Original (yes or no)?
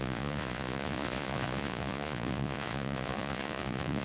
no